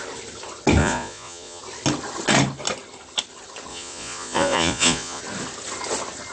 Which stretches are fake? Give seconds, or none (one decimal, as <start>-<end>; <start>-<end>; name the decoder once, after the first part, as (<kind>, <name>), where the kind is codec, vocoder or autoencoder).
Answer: 0.8-1.6 (vocoder, Vocos); 3.7-5.2